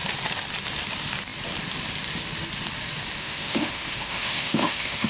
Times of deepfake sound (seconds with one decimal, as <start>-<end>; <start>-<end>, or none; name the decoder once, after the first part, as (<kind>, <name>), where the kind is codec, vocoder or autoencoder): 3.2-5.1 (autoencoder, DAC-VAE)